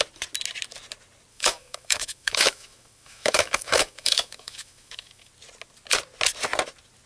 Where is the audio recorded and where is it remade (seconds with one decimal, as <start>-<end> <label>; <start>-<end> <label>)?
0.0-1.3 recorded; 1.3-5.3 remade; 5.3-7.1 recorded